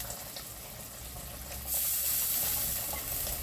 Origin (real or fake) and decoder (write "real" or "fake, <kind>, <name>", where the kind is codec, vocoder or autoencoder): real